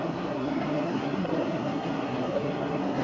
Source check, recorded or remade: remade